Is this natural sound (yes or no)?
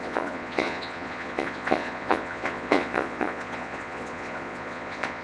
no